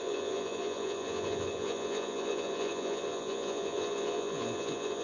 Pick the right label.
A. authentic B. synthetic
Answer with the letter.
B